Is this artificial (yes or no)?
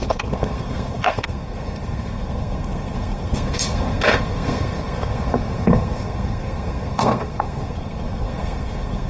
yes